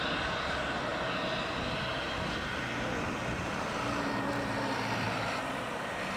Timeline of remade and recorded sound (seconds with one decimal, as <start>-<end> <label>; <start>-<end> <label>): 0.0-0.9 remade; 0.9-4.6 recorded; 4.6-6.2 remade